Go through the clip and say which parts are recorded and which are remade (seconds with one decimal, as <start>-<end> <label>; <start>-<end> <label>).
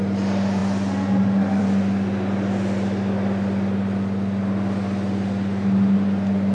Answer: 0.0-6.5 recorded